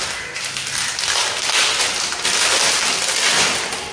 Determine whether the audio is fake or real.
real